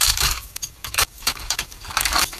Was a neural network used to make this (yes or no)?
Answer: yes